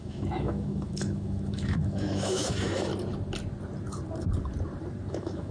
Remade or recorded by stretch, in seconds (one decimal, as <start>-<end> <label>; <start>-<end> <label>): 0.0-2.9 remade; 2.9-5.1 recorded; 5.1-5.5 remade